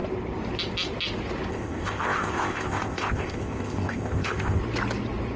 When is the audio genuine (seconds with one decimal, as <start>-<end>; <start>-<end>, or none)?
0.0-1.5; 4.6-5.4